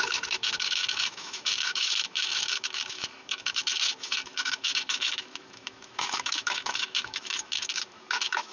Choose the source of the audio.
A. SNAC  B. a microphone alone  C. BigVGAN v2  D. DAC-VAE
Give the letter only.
D